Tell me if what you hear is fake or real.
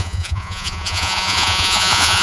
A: fake